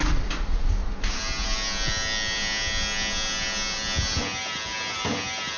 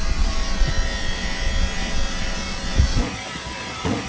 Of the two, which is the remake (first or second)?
second